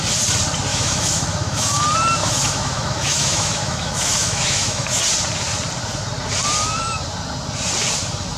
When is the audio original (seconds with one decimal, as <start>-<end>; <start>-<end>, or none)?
0.0-0.7; 1.8-2.2; 5.0-8.4